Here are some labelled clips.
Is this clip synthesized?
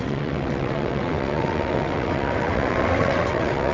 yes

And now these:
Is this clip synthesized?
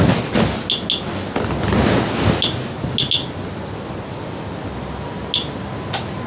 no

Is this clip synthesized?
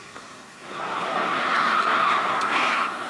yes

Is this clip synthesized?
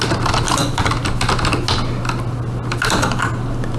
no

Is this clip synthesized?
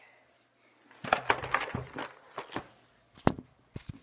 no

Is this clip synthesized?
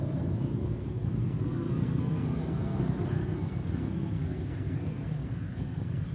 yes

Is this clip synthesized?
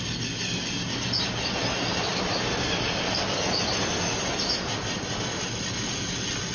no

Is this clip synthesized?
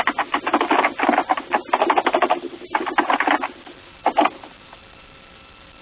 no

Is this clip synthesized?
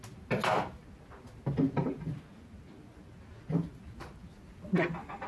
no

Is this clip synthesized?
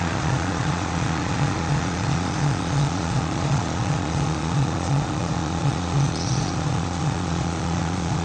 yes